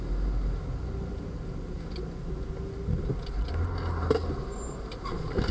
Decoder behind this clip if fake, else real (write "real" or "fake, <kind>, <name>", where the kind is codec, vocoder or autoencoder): real